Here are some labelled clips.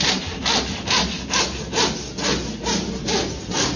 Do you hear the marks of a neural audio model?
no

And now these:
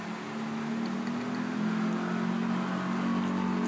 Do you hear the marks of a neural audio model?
no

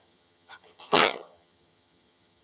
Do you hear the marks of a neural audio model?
yes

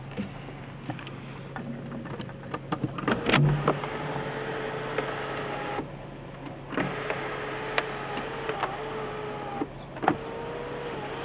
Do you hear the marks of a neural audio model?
no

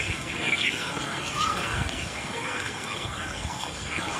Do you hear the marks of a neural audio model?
yes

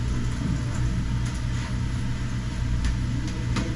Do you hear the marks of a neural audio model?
no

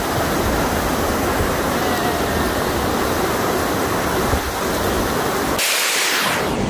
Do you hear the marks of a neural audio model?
no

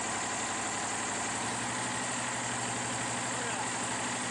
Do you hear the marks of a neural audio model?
no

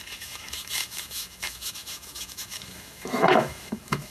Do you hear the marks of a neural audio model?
yes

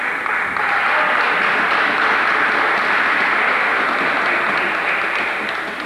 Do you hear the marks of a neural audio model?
no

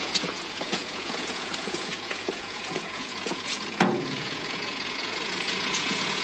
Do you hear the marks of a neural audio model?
yes